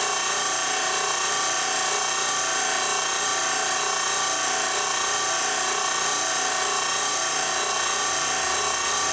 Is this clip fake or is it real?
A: real